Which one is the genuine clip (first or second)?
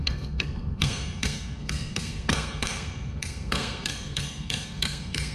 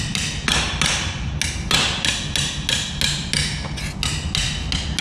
second